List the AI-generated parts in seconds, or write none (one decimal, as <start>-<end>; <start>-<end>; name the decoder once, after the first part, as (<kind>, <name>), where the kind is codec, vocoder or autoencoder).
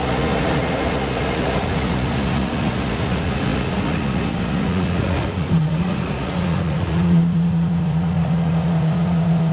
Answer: 0.0-9.5 (vocoder, Vocos)